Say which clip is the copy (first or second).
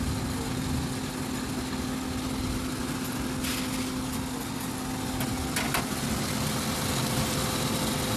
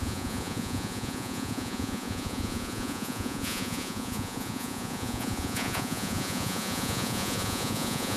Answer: second